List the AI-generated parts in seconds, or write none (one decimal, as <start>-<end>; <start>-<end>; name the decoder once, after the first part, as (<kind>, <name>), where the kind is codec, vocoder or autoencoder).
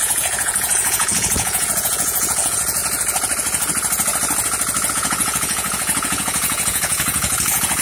0.0-2.8 (vocoder, Vocos); 4.9-7.8